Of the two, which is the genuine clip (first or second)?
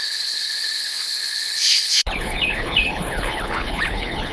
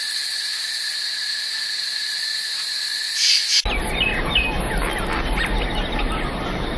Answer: second